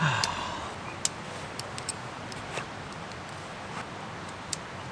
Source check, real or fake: real